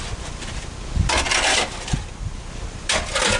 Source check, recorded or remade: remade